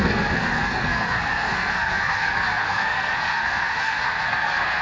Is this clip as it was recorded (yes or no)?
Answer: no